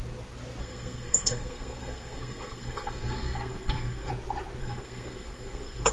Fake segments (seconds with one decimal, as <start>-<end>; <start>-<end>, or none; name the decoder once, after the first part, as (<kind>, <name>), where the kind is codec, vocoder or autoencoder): 0.6-4.1 (codec, SNAC); 4.6-5.9